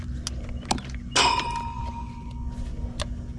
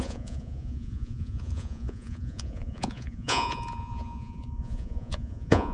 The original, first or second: first